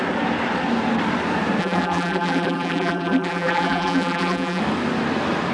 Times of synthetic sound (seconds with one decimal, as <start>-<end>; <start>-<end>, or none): 1.6-4.6